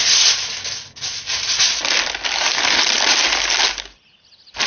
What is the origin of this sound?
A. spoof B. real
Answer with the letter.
B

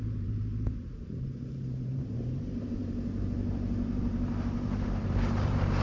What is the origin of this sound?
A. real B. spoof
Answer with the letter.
B